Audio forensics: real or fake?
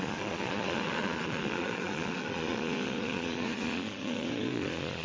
fake